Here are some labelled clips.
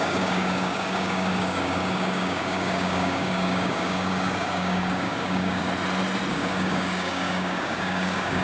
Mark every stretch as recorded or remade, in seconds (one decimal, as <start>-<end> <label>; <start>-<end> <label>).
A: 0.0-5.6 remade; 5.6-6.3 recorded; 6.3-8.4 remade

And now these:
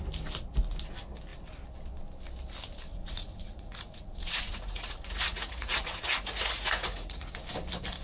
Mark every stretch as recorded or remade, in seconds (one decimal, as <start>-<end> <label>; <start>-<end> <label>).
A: 0.0-2.9 recorded; 2.9-7.3 remade; 7.3-8.0 recorded

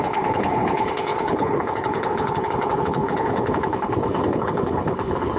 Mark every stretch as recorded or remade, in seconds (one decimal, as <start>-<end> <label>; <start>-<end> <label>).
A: 0.0-5.4 remade

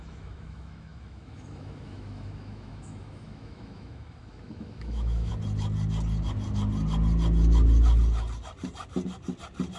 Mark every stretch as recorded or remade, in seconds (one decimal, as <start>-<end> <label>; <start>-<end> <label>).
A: 0.0-5.3 remade; 5.3-9.8 recorded

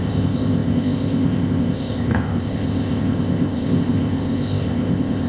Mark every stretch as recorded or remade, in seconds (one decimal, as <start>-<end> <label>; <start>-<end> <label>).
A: 0.0-5.3 remade

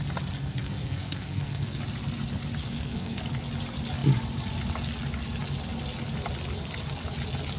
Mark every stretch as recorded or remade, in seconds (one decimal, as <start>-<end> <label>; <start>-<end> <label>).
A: 0.0-0.4 recorded; 0.4-1.8 remade; 1.8-2.6 recorded; 2.6-3.2 remade; 3.2-7.6 recorded

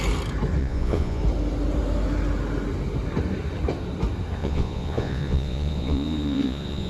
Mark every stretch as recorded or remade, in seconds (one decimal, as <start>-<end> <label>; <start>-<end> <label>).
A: 0.0-0.6 recorded; 0.6-1.2 remade; 1.2-4.4 recorded; 4.4-6.9 remade